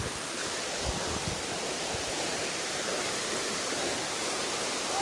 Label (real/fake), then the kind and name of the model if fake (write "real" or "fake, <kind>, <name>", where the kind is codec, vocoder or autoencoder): fake, vocoder, BigVGAN v2